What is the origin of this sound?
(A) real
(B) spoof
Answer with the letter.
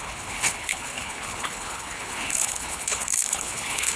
B